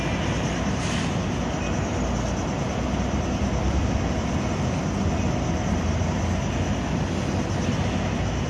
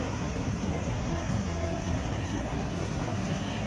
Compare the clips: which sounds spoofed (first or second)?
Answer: second